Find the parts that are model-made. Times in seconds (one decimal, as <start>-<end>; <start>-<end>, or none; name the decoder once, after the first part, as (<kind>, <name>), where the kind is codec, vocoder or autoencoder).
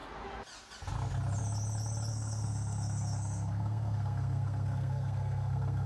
2.1-5.9 (codec, SNAC)